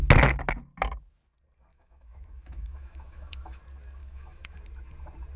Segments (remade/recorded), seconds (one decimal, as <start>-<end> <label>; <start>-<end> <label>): 0.0-1.7 recorded; 1.7-3.6 remade; 3.6-4.0 recorded; 4.0-4.6 remade; 4.6-5.4 recorded